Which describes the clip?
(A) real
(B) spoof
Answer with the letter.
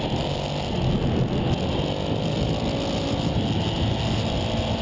A